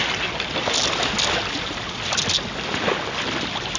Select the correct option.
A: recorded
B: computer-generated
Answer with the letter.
A